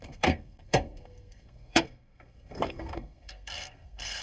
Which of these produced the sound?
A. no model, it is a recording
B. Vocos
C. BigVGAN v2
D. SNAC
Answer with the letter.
D